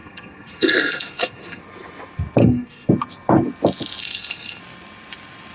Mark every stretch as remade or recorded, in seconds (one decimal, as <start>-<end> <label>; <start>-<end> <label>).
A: 0.0-1.6 remade; 1.6-2.4 recorded; 2.4-2.9 remade; 2.9-4.0 recorded; 4.0-4.6 remade; 4.6-5.5 recorded